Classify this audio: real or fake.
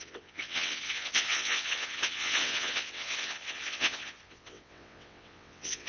fake